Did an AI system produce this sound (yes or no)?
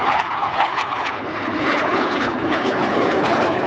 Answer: yes